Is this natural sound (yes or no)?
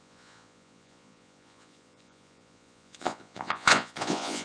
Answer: no